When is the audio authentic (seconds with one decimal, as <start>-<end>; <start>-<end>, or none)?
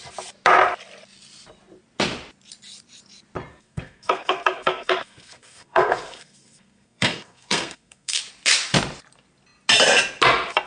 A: 0.0-3.5; 8.2-10.7